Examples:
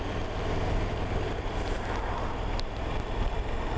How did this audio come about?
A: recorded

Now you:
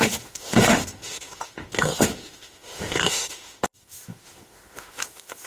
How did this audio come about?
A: remade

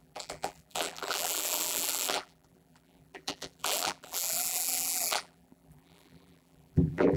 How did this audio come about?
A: remade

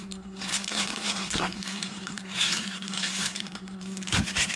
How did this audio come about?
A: remade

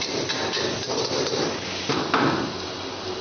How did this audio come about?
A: recorded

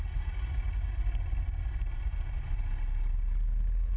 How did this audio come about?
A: recorded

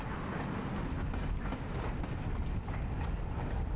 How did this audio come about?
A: recorded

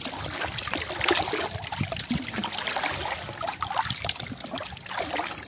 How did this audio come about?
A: recorded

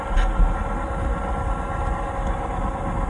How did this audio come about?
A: recorded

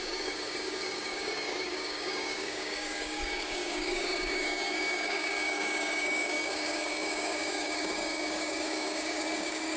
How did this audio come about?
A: remade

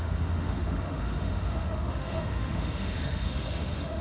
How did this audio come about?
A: remade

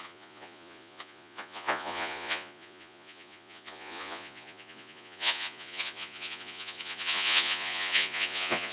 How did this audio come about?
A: remade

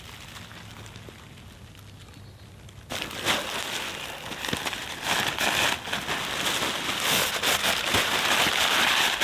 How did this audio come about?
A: recorded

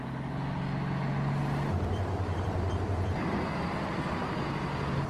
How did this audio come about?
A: recorded